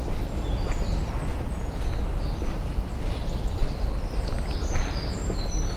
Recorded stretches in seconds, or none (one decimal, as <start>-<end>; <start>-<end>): 0.0-5.8